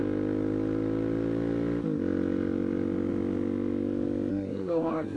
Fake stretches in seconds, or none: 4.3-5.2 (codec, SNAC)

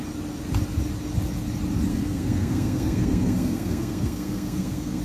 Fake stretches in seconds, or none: 1.9-5.0 (codec, SNAC)

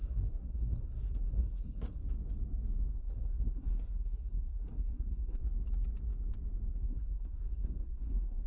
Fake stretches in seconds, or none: 0.0-2.0 (codec, SNAC); 2.9-5.4; 6.7-8.5

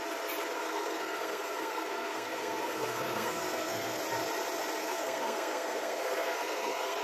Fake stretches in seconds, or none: 0.6-4.0 (codec, SNAC); 4.8-7.0

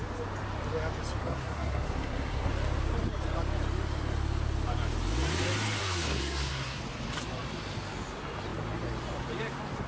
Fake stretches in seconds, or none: 1.2-2.5 (codec, SNAC); 5.8-6.8

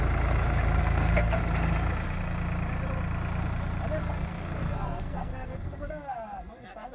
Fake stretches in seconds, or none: 0.8-1.4 (codec, SNAC); 4.0-6.9

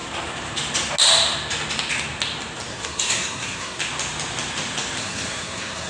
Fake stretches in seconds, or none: 2.7-3.8 (codec, SNAC); 5.0-5.9

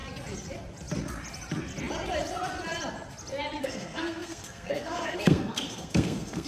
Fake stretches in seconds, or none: 3.6-6.5 (codec, SNAC)